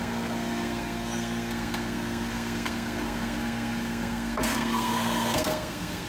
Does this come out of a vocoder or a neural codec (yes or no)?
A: yes